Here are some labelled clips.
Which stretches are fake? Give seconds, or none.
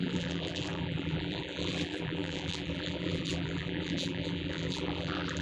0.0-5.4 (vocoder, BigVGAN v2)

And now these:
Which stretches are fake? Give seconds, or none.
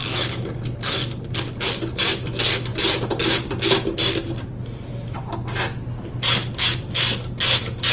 none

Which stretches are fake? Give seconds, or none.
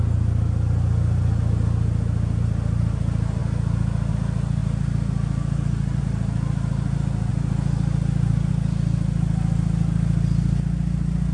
none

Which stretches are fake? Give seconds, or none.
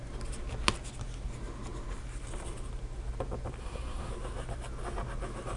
3.6-4.1 (codec, SNAC)